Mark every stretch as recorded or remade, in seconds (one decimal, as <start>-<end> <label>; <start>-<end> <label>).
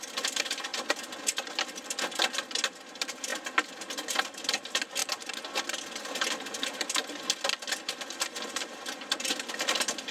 0.0-0.7 recorded; 0.7-1.2 remade; 1.2-10.1 recorded